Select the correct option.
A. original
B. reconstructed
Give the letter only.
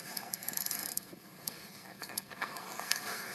B